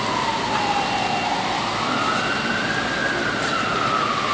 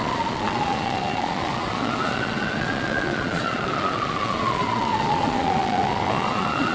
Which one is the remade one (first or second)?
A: second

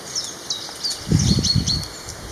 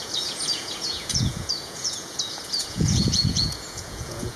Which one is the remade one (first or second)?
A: second